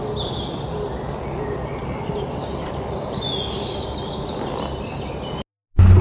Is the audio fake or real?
real